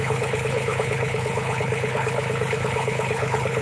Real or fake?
fake